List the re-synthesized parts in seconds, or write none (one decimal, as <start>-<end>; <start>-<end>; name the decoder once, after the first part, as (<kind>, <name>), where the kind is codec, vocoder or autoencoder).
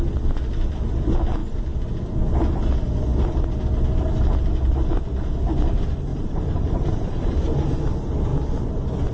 6.1-7.8 (vocoder, BigVGAN v2)